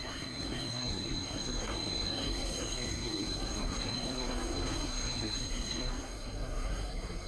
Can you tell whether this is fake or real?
fake